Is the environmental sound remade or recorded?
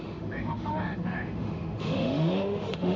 remade